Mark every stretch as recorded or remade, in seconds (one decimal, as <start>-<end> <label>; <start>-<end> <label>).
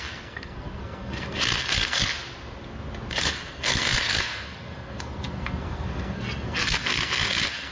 0.0-2.0 remade; 2.0-3.1 recorded; 3.1-7.7 remade